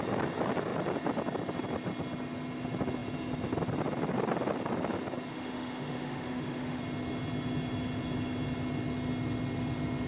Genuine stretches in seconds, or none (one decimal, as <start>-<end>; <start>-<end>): 0.0-5.3; 6.8-10.1